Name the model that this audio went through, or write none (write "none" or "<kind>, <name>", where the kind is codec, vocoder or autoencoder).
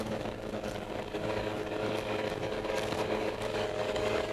codec, DAC